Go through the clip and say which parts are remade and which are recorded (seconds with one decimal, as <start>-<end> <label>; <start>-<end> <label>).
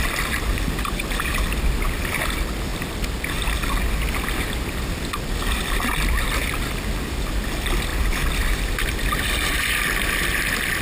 0.0-10.8 recorded